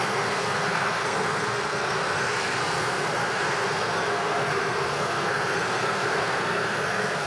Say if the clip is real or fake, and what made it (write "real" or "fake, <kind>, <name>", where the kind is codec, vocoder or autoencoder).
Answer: fake, codec, SNAC